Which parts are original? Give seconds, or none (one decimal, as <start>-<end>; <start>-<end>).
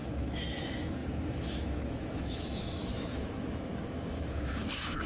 none